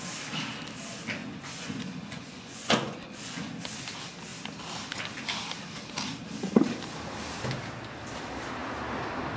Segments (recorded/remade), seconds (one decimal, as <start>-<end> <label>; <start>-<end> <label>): 0.0-1.2 recorded; 1.2-3.6 remade; 3.6-9.4 recorded